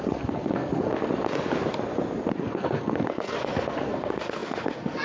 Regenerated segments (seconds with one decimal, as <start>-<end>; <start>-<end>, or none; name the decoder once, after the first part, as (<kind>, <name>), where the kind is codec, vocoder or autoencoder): 0.0-0.9 (codec, SNAC); 2.4-5.0